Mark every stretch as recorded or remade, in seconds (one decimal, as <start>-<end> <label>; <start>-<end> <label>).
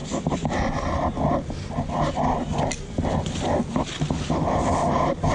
0.0-1.5 remade; 1.5-5.3 recorded